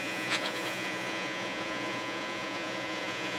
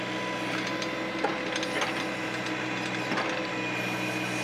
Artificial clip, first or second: first